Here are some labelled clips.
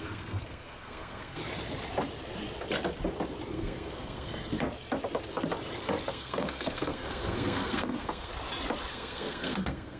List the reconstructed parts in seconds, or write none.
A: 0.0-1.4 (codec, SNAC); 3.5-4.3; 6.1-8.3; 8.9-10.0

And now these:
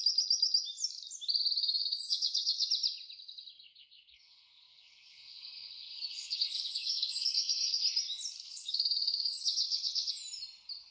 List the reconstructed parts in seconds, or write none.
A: 1.6-2.7 (codec, SNAC); 3.7-7.8; 8.4-10.1

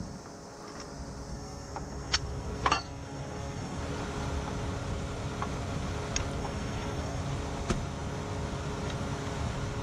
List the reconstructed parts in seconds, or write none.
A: 1.3-3.8 (codec, SNAC); 6.4-7.2

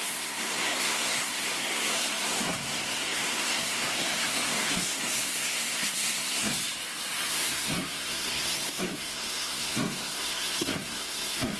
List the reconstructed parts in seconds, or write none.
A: 0.0-6.6 (codec, SNAC); 7.3-11.6

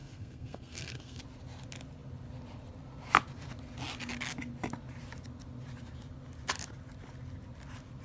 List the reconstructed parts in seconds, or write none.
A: 0.0-1.2 (codec, SNAC)

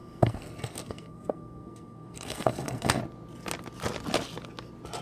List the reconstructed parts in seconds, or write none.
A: 0.0-3.0 (codec, SNAC)

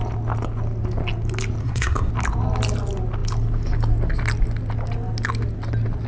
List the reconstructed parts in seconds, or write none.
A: 1.6-2.1 (codec, SNAC)

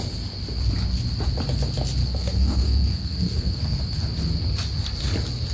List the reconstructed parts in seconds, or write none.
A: 2.0-3.8 (codec, SNAC)